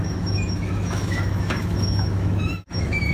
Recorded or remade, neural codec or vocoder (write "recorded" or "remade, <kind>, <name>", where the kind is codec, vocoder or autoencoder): remade, autoencoder, DAC-VAE